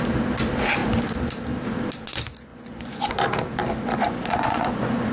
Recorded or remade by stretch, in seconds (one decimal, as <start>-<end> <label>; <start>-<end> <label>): 0.0-2.5 recorded; 2.5-3.1 remade; 3.1-4.0 recorded; 4.0-5.1 remade